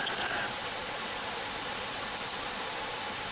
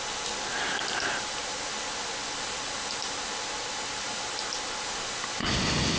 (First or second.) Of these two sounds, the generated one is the first